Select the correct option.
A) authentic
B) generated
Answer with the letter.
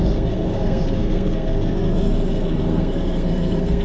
B